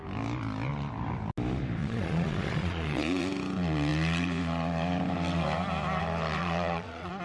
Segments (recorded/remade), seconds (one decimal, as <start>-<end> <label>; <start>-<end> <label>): 0.0-1.8 recorded; 1.8-3.2 remade; 3.2-6.4 recorded; 6.4-7.2 remade